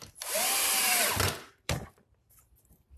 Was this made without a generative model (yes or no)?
no